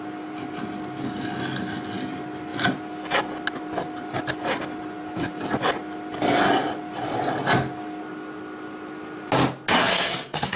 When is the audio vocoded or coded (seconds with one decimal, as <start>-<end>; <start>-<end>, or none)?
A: 9.8-10.6